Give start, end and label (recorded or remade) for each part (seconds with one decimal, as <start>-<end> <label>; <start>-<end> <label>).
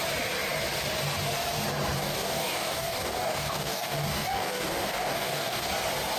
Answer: 0.0-2.0 recorded; 2.0-5.7 remade; 5.7-6.2 recorded